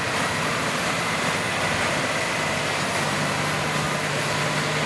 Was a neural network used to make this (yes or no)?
no